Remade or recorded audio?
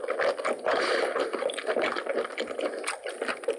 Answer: recorded